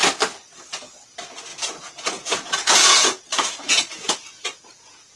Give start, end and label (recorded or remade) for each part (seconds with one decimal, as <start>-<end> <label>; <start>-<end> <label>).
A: 0.0-1.5 recorded; 1.5-4.6 remade; 4.6-5.2 recorded